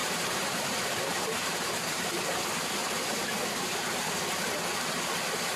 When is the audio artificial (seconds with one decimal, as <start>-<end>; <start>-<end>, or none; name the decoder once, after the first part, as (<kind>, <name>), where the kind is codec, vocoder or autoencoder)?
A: 0.0-2.0 (vocoder, BigVGAN v2); 2.8-3.7